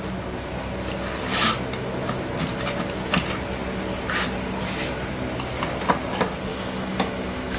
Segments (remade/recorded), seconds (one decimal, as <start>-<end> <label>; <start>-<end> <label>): 0.0-6.5 recorded; 6.5-7.6 remade